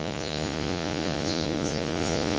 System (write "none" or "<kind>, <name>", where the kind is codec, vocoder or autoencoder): vocoder, Vocos